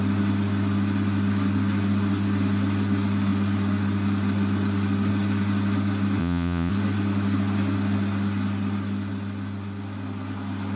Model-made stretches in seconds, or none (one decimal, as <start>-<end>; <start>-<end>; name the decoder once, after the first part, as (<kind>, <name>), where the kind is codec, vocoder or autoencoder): 6.2-6.7 (vocoder, Vocos)